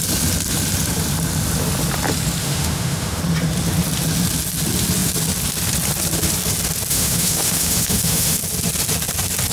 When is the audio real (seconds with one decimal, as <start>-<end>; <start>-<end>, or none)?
0.0-2.4; 3.2-6.9; 8.4-9.5